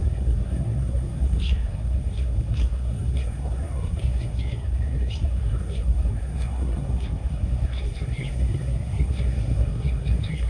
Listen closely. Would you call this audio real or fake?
fake